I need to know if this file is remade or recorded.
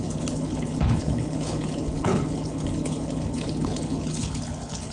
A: remade